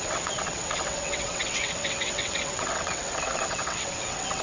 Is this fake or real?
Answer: fake